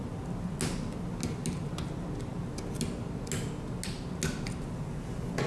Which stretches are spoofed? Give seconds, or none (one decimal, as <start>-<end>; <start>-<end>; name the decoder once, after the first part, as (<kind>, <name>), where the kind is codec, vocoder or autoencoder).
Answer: none